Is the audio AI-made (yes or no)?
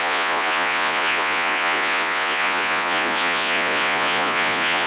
yes